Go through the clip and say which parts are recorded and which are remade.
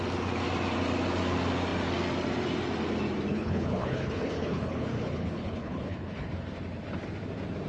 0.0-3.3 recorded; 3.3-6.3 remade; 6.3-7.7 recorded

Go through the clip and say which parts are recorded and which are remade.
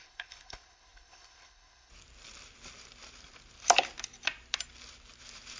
0.0-1.9 remade; 1.9-5.6 recorded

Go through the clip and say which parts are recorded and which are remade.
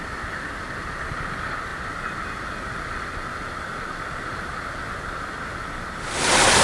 0.0-6.6 recorded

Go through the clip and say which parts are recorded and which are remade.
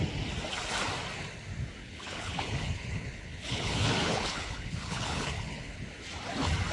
0.0-1.8 recorded; 1.8-5.8 remade; 5.8-6.7 recorded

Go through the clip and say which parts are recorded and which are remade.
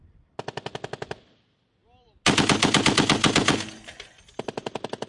0.0-5.1 recorded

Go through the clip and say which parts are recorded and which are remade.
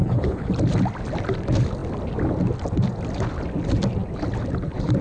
0.0-0.5 remade; 0.5-5.0 recorded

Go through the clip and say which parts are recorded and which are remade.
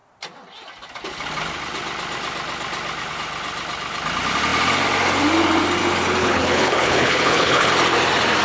0.0-6.2 recorded; 6.2-7.7 remade; 7.7-8.4 recorded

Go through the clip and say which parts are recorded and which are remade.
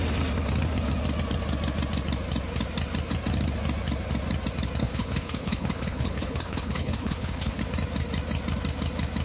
0.0-4.8 recorded; 4.8-7.6 remade; 7.6-9.2 recorded